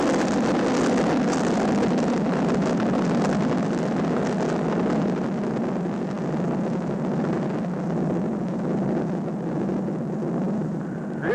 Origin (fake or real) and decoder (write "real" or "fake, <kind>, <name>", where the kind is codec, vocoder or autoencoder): real